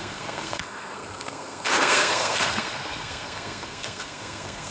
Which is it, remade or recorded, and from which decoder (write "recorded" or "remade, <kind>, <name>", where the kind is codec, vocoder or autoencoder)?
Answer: remade, codec, SNAC